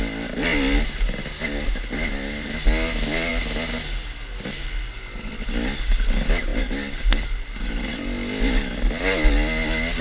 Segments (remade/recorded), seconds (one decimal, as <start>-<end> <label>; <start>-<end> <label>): 0.0-10.0 recorded